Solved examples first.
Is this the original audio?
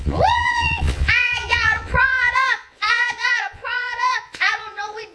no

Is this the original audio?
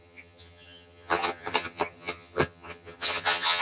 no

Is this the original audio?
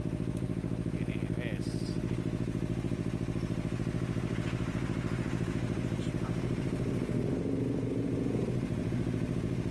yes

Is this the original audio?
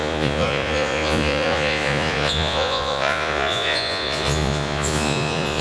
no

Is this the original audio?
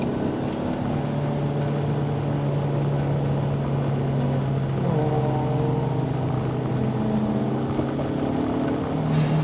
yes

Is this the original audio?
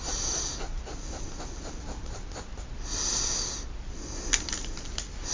yes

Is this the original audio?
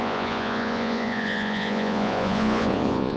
no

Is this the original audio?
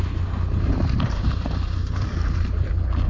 no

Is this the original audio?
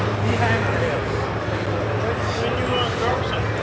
yes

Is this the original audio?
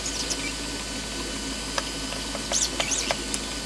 yes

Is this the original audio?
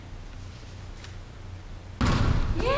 yes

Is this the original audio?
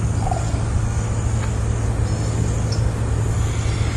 yes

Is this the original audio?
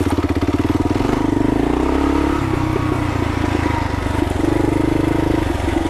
yes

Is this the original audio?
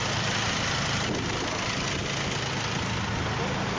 yes